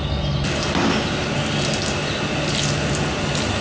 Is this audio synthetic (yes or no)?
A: no